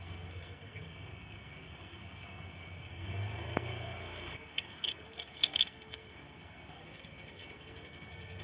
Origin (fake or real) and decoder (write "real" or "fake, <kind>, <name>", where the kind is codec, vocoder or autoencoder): fake, codec, SNAC